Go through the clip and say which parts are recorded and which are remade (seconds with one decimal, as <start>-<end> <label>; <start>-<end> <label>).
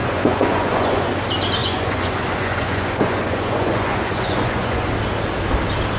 0.0-1.1 remade; 1.1-1.6 recorded; 1.6-4.9 remade; 4.9-6.0 recorded